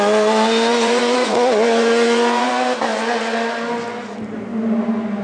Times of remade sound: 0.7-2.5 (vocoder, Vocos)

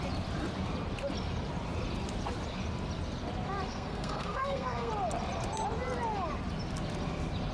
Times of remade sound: 3.7-4.9 (codec, SNAC)

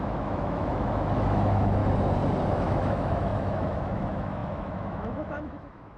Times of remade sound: 0.0-1.8 (autoencoder, DAC-VAE); 2.5-6.0

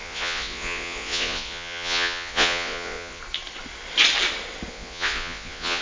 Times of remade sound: 0.0-3.2 (vocoder, Vocos); 4.7-5.8